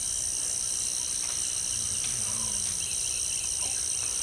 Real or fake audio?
real